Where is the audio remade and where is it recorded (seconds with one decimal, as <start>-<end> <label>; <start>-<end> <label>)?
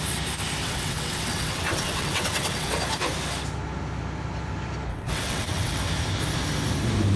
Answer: 0.0-0.6 recorded; 0.6-2.7 remade; 2.7-4.9 recorded; 4.9-5.8 remade; 5.8-7.2 recorded